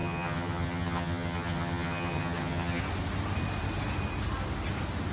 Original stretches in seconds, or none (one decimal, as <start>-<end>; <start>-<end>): 2.8-5.1